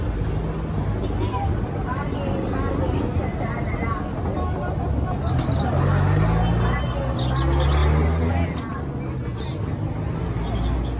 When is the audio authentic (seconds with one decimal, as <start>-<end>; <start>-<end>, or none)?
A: 0.0-11.0